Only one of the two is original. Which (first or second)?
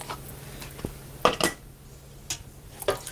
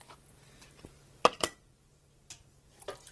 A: first